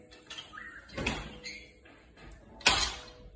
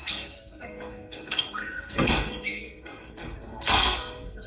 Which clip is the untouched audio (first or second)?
first